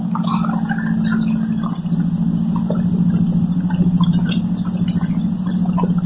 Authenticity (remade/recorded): recorded